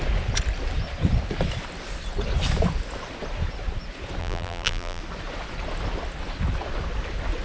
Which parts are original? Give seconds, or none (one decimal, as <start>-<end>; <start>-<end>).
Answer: 0.0-4.2; 5.0-7.4